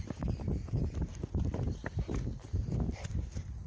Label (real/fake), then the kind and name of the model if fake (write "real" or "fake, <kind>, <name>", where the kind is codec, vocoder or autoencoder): real